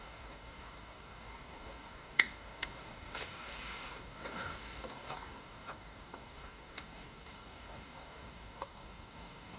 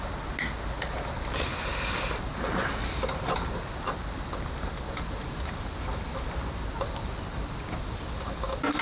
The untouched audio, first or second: second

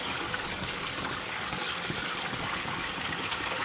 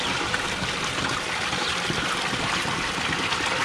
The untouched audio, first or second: second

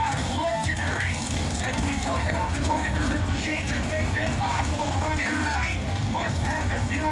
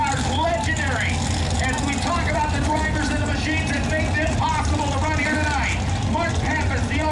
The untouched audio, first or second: second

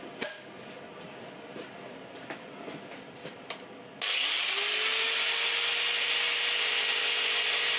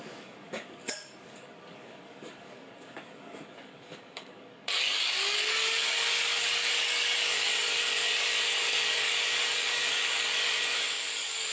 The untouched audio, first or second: first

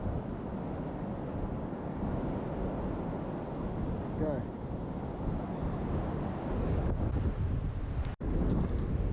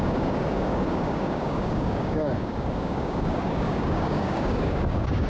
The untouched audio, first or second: first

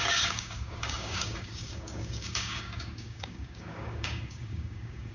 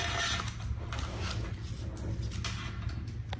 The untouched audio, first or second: second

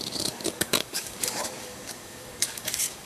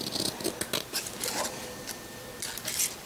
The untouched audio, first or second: second